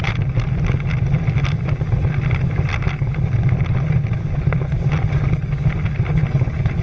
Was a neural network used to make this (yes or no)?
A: no